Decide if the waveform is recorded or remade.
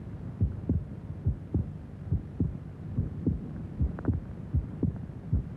remade